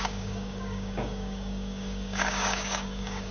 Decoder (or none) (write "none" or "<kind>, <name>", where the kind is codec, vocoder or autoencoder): codec, DAC